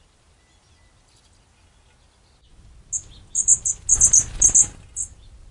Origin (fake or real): real